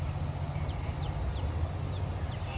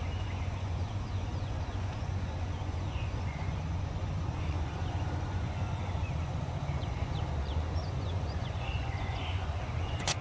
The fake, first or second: second